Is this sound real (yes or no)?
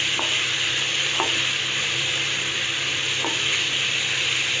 no